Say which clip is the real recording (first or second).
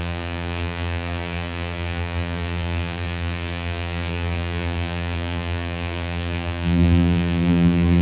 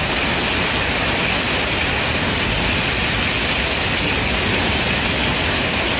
second